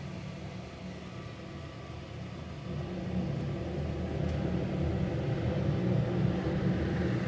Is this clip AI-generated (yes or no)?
no